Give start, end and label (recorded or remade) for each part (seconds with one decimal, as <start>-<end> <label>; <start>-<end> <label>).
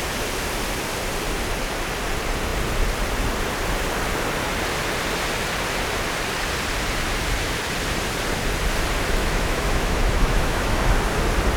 0.0-9.2 recorded; 9.2-10.8 remade; 10.8-11.6 recorded